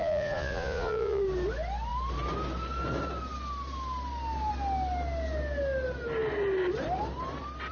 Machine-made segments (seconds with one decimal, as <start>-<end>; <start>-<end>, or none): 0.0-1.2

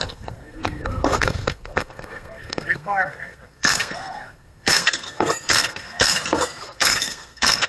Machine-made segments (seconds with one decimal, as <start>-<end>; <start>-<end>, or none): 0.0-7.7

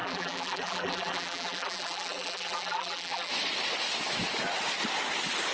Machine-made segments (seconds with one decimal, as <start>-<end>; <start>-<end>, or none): 0.0-3.3

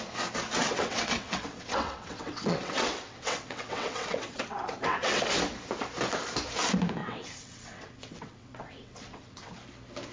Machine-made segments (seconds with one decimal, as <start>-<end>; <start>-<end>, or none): 0.6-5.3; 7.0-9.5